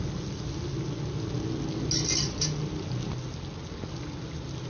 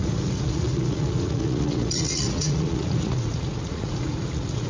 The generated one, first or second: second